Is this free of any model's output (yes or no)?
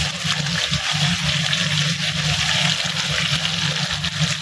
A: yes